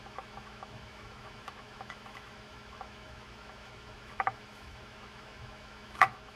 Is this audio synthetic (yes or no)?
yes